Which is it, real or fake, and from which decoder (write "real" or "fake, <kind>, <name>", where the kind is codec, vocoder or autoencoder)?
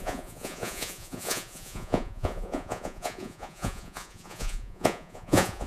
fake, vocoder, Vocos